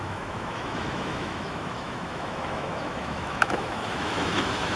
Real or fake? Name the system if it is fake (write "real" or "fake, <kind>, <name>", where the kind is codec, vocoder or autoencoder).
fake, autoencoder, DAC-VAE